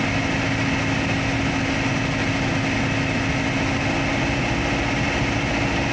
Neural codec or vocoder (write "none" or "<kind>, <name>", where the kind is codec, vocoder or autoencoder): none